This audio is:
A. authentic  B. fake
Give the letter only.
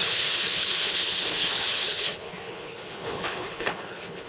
B